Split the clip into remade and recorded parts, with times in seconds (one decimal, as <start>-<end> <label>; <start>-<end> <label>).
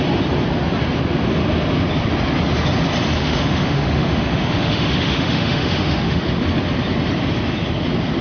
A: 0.0-3.2 recorded; 3.2-6.2 remade; 6.2-8.2 recorded